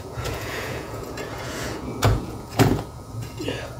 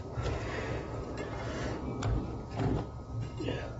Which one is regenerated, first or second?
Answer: first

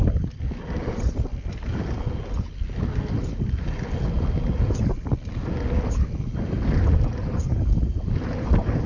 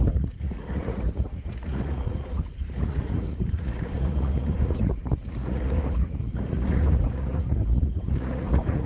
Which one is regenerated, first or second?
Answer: second